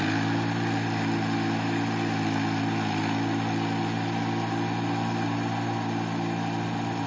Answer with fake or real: real